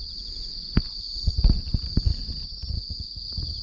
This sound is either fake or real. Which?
real